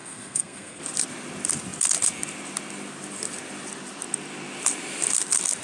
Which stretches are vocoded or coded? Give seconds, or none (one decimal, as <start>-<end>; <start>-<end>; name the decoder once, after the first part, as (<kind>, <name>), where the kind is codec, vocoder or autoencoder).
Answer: 0.0-0.8 (codec, SNAC)